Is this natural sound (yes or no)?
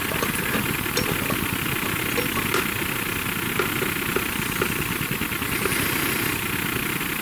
yes